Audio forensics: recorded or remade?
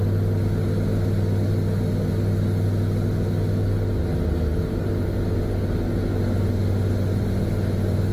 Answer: recorded